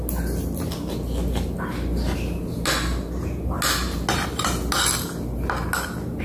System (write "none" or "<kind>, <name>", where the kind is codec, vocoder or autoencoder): none